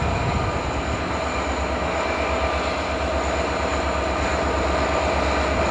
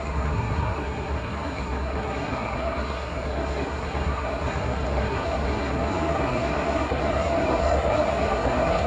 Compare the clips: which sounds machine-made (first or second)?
second